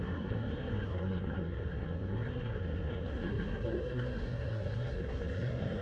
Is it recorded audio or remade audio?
remade